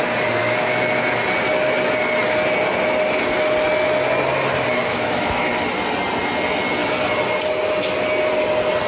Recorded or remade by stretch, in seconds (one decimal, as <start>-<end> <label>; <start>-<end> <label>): 0.0-0.4 recorded; 0.4-1.0 remade; 1.0-4.8 recorded; 4.8-5.5 remade; 5.5-8.9 recorded